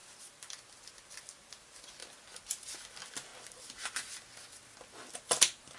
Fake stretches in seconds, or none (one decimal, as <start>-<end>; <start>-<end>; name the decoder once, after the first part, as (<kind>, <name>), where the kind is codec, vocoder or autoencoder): none